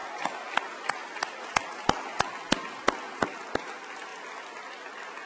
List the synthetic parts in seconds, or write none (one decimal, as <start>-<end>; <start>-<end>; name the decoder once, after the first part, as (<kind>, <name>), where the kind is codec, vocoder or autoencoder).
none